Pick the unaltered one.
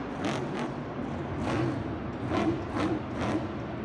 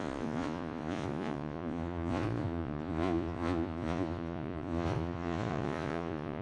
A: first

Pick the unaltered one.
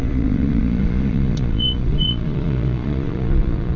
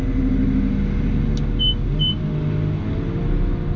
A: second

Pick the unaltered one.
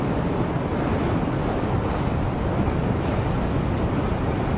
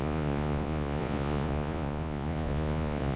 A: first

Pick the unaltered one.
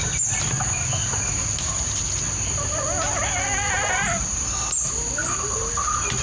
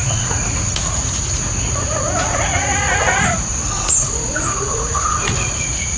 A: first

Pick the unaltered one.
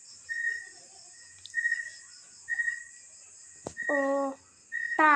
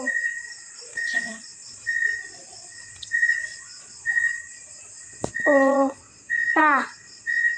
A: first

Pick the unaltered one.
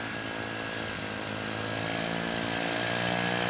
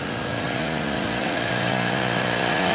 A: first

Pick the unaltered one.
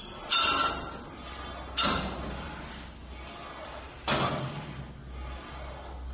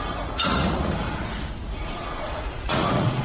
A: first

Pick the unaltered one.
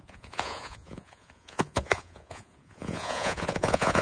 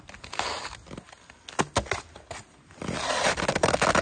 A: second